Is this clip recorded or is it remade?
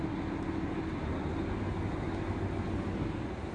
recorded